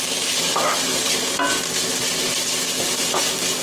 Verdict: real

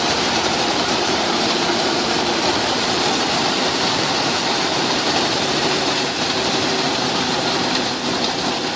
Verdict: fake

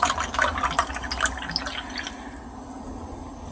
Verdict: real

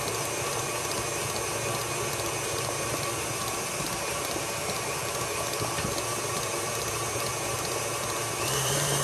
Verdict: fake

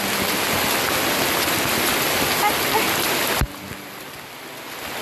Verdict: real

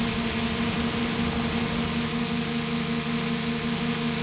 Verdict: real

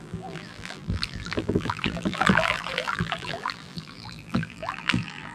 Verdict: fake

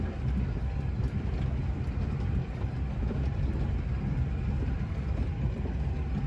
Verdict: real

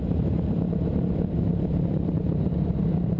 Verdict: fake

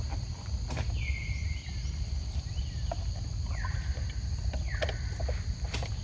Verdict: real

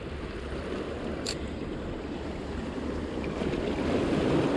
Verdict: real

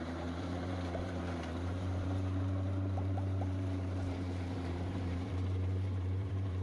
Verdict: fake